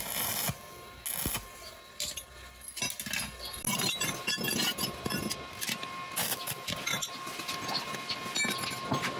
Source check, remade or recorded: recorded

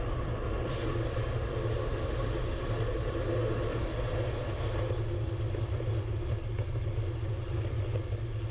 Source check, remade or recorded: recorded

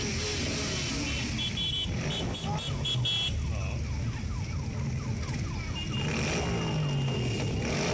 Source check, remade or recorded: recorded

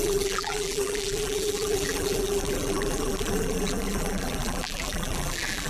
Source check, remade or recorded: remade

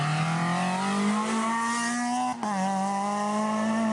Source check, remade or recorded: recorded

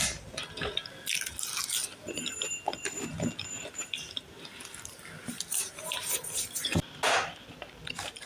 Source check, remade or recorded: recorded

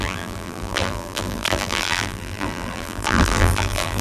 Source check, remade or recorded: remade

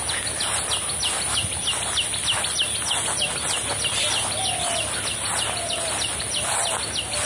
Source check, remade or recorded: recorded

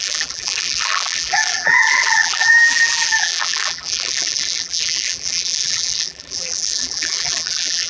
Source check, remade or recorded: remade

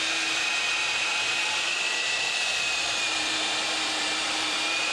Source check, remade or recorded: remade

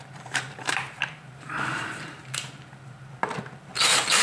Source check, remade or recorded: remade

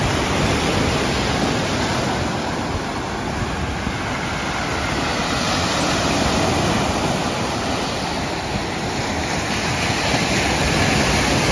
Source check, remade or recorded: recorded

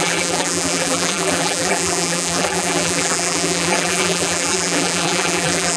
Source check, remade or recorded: remade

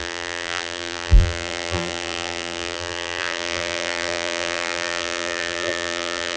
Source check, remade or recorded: remade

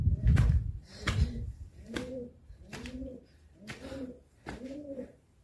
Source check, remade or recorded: remade